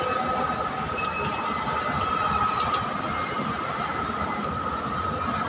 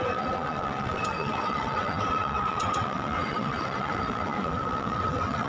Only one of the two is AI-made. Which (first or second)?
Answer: second